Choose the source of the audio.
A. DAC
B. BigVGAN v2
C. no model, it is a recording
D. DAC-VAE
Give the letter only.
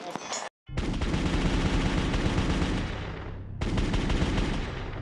C